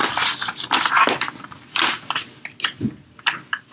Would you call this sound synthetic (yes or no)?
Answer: no